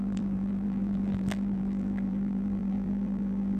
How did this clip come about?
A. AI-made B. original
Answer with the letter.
A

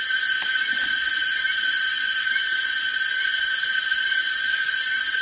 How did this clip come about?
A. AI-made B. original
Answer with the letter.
B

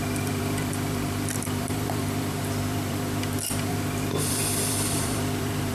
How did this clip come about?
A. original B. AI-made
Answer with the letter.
B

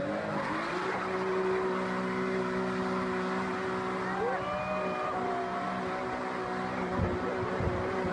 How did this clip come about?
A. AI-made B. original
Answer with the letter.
B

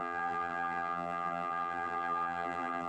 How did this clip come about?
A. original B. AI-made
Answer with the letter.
B